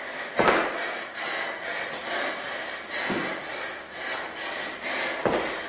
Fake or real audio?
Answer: real